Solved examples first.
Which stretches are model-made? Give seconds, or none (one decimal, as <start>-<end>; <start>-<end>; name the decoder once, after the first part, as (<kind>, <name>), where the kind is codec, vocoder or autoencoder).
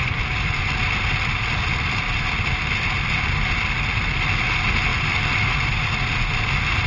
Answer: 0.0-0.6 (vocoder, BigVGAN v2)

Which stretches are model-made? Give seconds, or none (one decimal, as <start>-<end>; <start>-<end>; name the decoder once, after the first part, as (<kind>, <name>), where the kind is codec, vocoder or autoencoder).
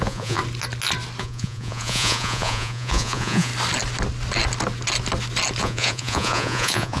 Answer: 0.0-0.4 (vocoder, Vocos); 1.2-3.5; 5.6-7.0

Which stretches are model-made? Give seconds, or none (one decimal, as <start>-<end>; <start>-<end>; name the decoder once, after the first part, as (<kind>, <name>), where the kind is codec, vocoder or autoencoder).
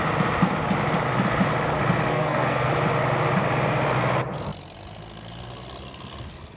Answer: 2.1-2.7 (codec, SNAC)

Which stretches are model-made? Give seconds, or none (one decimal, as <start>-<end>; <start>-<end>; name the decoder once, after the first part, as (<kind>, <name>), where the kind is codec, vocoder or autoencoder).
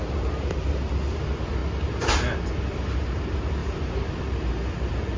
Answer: none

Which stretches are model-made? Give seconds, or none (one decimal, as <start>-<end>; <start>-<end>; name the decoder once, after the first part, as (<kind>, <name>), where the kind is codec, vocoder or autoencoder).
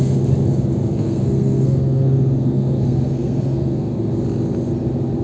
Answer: 0.9-4.0 (codec, SNAC)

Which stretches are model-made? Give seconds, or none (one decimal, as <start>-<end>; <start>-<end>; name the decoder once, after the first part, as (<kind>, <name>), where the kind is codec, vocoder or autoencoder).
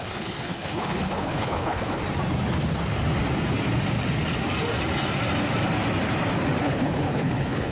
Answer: 0.0-2.0 (codec, HILCodec); 6.6-7.7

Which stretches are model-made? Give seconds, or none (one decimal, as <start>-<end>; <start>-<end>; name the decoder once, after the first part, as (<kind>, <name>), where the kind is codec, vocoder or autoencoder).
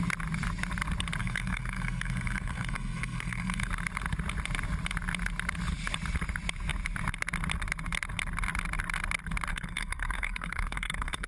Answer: 1.2-3.7 (codec, SNAC); 9.5-11.3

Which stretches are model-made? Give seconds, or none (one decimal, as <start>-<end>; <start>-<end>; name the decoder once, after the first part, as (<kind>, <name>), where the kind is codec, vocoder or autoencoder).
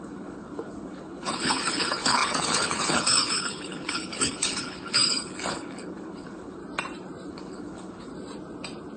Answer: 0.0-6.6 (codec, HILCodec); 7.3-8.1